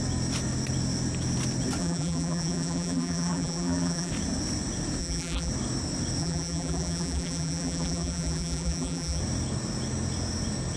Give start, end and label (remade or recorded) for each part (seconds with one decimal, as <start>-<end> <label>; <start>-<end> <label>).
0.0-1.8 recorded; 1.8-4.1 remade; 4.1-5.0 recorded; 5.0-5.5 remade; 5.5-6.2 recorded; 6.2-9.2 remade; 9.2-10.8 recorded